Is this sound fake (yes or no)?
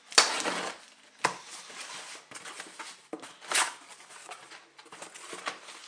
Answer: no